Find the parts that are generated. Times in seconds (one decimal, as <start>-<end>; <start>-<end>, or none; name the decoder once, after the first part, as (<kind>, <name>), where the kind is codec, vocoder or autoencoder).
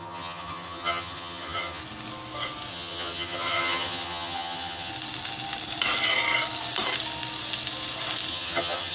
0.0-1.8 (vocoder, HiFi-GAN); 2.7-4.9; 8.3-8.9